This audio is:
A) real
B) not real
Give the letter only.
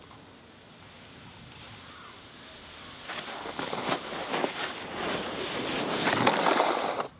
A